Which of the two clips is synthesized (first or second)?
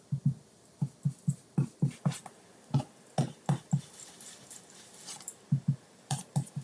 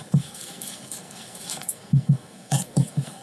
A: second